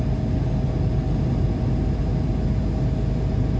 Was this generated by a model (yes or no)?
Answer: no